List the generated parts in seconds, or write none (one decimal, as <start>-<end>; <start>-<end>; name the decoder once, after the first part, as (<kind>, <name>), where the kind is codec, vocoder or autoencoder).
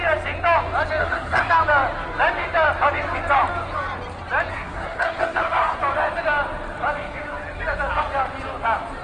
1.0-1.5 (codec, SNAC); 4.5-5.8